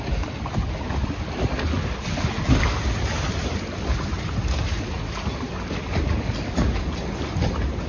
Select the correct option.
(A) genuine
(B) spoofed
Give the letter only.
A